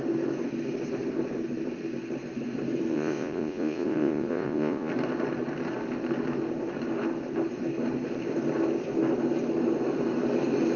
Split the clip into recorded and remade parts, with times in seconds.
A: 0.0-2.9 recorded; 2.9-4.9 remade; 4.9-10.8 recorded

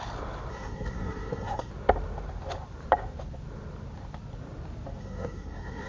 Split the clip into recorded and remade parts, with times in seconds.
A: 0.0-0.5 recorded; 0.5-1.7 remade; 1.7-5.0 recorded; 5.0-5.9 remade

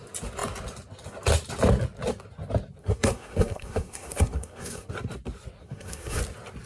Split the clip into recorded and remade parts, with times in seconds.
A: 0.0-2.8 recorded; 2.8-4.9 remade; 4.9-5.6 recorded; 5.6-6.2 remade; 6.2-6.7 recorded